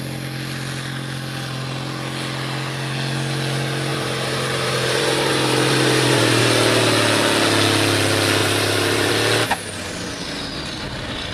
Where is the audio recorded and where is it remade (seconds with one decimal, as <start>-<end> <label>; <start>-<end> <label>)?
0.0-3.9 recorded; 3.9-6.4 remade; 6.4-8.4 recorded; 8.4-9.1 remade; 9.1-11.3 recorded